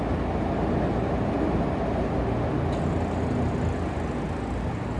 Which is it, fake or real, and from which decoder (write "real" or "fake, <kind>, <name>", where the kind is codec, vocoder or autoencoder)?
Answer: real